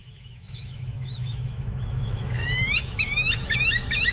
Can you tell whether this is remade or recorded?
remade